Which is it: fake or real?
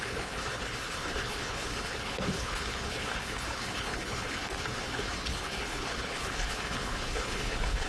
fake